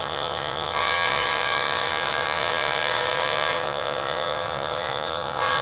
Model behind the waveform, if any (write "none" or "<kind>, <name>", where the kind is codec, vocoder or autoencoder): vocoder, WaveNeXt